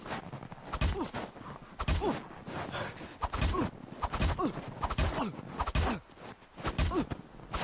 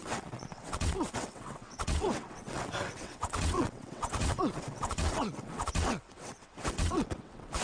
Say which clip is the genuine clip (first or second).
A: first